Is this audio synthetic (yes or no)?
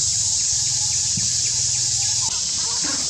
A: no